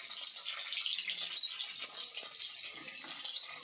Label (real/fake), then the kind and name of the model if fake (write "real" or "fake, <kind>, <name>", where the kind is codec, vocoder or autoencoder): real